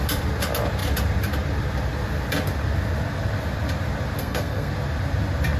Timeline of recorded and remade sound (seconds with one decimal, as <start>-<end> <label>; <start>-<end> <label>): 0.0-4.2 recorded; 4.2-4.7 remade; 4.7-5.6 recorded